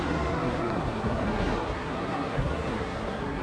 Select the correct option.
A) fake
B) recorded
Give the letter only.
A